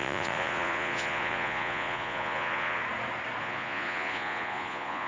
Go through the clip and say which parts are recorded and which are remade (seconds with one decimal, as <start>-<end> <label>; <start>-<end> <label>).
0.0-2.8 remade; 2.8-3.4 recorded; 3.4-5.1 remade